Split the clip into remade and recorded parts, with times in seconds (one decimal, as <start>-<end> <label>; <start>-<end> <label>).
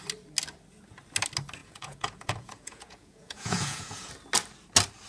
0.0-1.6 recorded; 1.6-4.1 remade; 4.1-5.1 recorded